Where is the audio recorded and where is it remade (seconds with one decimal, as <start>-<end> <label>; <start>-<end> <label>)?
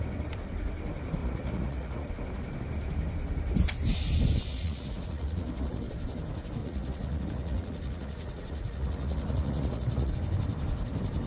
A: 0.0-1.2 recorded; 1.2-2.1 remade; 2.1-4.5 recorded; 4.5-5.9 remade; 5.9-6.6 recorded; 6.6-10.1 remade; 10.1-11.3 recorded